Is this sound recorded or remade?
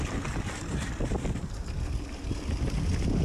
recorded